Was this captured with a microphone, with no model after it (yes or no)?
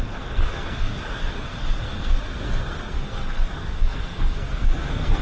no